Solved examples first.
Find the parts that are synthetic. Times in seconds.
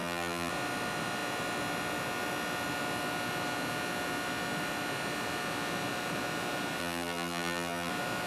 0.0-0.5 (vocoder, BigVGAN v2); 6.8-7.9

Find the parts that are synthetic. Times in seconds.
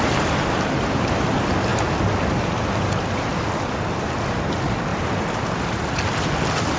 none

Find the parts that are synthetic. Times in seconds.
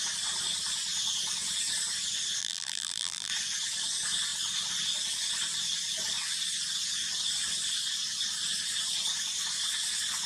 2.4-3.3 (vocoder, BigVGAN v2)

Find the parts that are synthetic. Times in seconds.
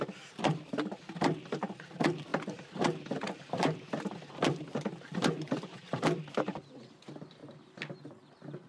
2.3-6.9 (vocoder, BigVGAN v2)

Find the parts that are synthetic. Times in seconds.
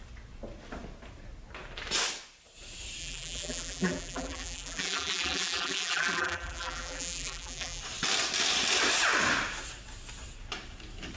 3.0-7.8 (vocoder, BigVGAN v2)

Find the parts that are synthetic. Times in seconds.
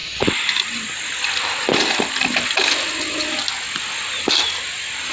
0.0-3.4 (vocoder, BigVGAN v2)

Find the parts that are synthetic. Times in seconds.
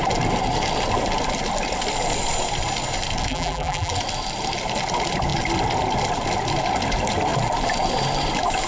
3.3-3.9 (vocoder, BigVGAN v2)